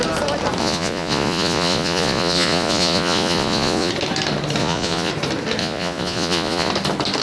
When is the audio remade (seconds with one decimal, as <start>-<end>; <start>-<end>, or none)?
0.6-3.9; 4.6-5.1; 5.6-6.7